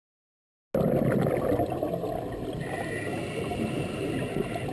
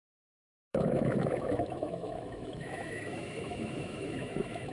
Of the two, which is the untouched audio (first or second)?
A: first